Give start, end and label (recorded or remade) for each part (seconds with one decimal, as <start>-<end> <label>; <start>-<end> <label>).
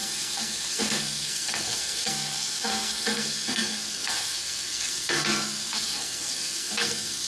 0.0-7.3 remade